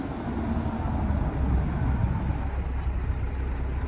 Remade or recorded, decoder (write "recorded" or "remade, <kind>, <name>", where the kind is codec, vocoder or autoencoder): recorded